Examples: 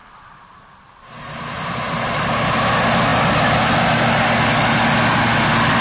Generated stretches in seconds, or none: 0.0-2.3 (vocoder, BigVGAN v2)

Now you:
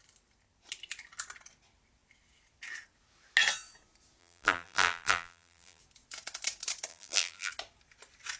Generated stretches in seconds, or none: 4.2-5.8 (vocoder, BigVGAN v2); 6.9-7.5

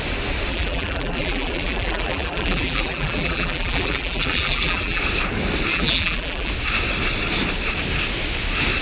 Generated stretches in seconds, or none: 0.5-5.0 (vocoder, BigVGAN v2); 5.7-6.5

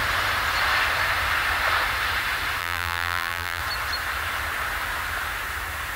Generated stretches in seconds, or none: 2.6-3.6 (vocoder, BigVGAN v2)

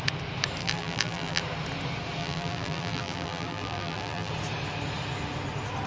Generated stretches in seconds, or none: 0.6-1.4 (vocoder, BigVGAN v2); 2.2-4.3